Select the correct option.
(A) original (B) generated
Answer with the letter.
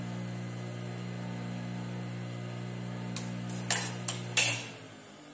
A